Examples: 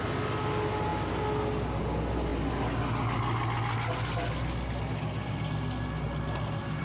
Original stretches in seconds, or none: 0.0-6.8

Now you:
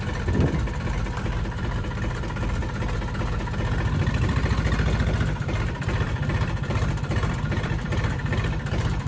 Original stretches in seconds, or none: 2.6-5.4

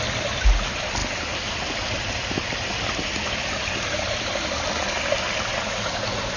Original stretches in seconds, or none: 0.0-6.4

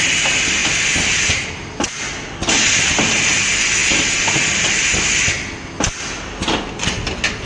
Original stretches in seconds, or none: 0.0-0.6; 1.5-7.5

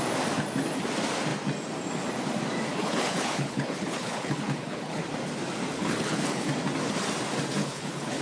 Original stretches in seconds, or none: 0.0-2.7; 5.0-5.7; 6.5-7.6

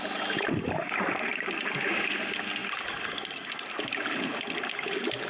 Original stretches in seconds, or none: 0.0-5.3